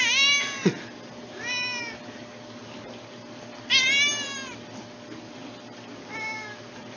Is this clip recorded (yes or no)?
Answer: yes